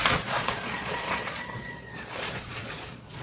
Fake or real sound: fake